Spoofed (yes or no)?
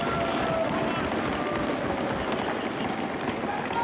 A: no